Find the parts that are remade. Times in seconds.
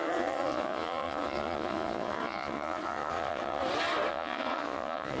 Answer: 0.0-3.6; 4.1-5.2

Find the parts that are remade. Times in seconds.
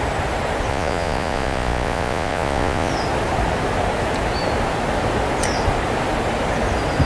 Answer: 0.7-2.9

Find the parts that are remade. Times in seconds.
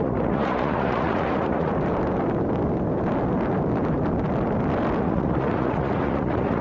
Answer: 0.0-1.7; 5.0-6.6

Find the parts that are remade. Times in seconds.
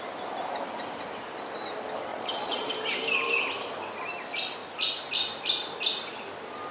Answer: 2.1-2.7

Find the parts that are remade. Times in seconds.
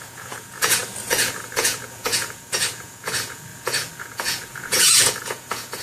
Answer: 0.0-5.8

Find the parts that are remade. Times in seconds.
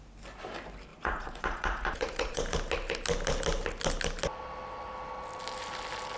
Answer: 0.9-2.4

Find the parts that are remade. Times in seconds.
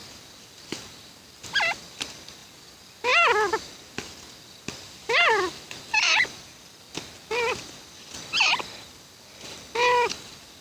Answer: none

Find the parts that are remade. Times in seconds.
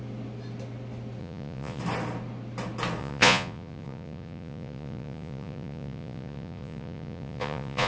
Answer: 1.2-1.8; 3.0-7.9